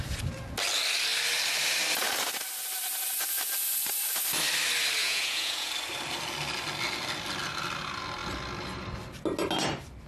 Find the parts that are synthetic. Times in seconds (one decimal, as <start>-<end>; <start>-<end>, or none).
5.0-5.7